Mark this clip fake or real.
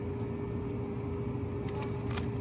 real